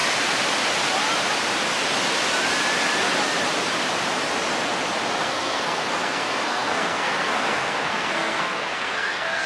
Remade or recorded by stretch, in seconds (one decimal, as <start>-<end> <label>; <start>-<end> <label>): 0.0-5.2 recorded; 5.2-9.5 remade